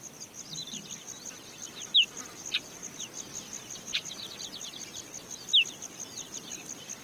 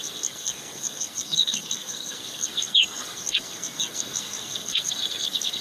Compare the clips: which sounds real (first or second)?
first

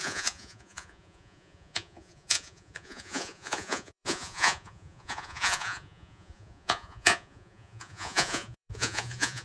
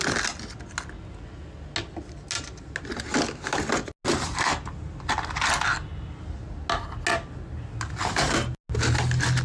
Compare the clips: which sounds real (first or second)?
second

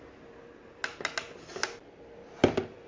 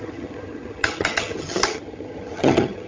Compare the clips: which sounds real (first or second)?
first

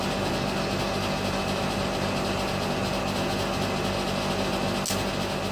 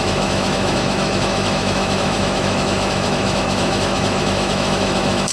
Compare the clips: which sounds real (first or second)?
first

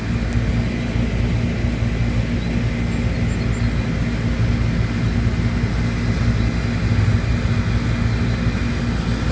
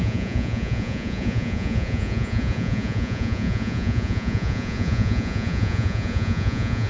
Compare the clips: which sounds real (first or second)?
first